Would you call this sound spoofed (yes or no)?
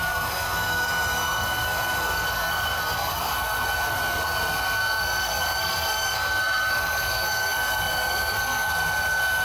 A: yes